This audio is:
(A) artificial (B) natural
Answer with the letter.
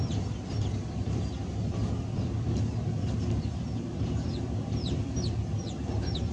A